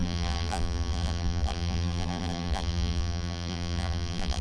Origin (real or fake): fake